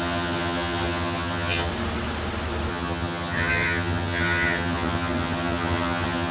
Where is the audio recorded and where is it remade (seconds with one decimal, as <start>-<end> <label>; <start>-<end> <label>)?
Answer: 0.0-1.7 remade; 1.7-2.7 recorded; 2.7-6.3 remade